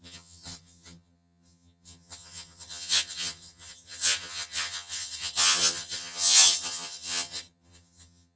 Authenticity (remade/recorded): remade